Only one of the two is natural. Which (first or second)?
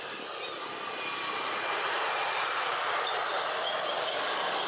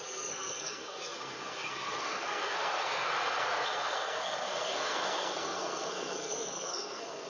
first